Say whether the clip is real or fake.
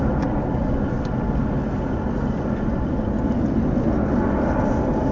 real